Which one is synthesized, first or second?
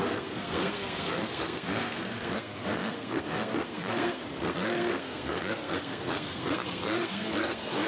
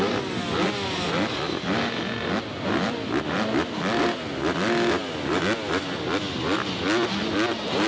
first